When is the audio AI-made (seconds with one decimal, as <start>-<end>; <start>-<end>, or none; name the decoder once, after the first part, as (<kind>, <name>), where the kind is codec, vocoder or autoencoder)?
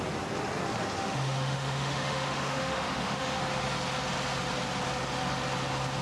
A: 1.0-3.4 (autoencoder, DAC-VAE)